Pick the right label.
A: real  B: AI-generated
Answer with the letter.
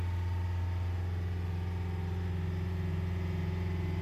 A